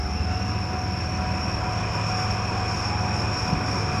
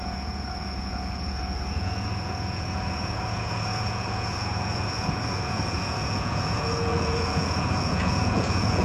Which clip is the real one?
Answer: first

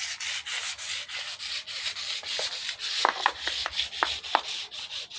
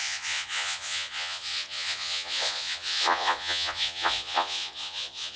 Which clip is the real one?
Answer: first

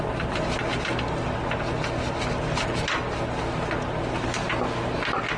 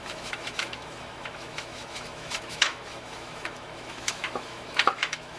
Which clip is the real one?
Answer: first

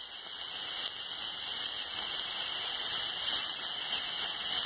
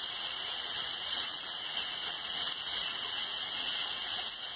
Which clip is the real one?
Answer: first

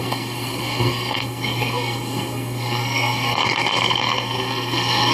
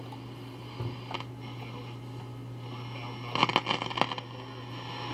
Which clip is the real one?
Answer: second